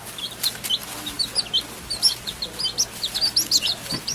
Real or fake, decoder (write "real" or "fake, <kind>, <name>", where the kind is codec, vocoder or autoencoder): real